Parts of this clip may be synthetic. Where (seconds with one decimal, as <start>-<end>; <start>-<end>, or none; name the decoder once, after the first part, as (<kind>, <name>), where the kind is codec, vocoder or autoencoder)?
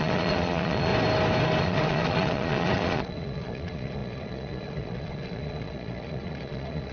0.0-0.9 (vocoder, Vocos); 1.6-6.9